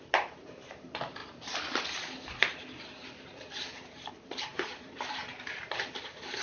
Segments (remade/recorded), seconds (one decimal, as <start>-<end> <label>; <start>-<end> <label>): 0.0-1.2 remade; 1.2-4.1 recorded; 4.1-6.4 remade